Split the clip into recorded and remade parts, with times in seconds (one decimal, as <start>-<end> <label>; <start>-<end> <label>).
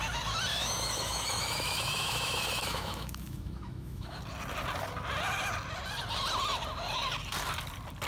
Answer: 0.0-0.5 recorded; 0.5-4.2 remade; 4.2-8.1 recorded